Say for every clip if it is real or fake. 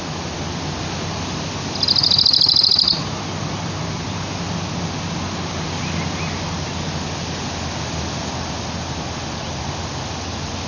real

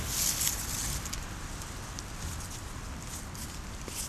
real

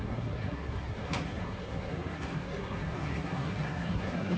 fake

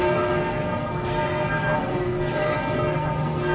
fake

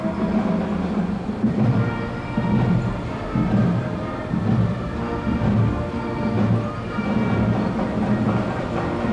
real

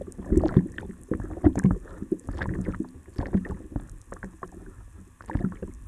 real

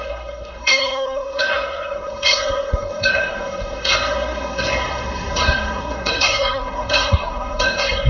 fake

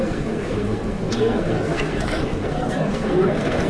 fake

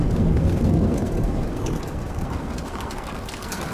fake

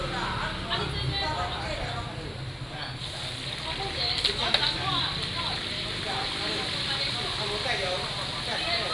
real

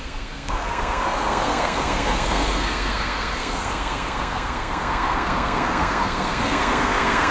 fake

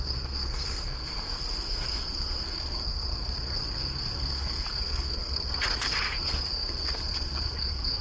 fake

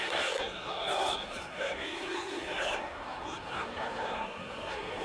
fake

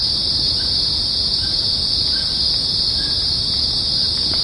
real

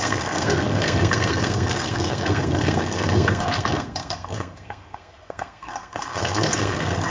fake